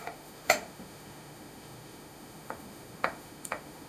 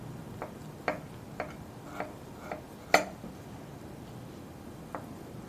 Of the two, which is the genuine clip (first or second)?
second